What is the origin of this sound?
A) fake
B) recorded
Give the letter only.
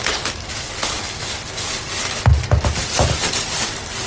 B